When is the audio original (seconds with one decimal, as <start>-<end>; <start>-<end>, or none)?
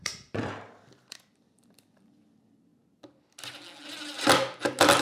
2.7-5.0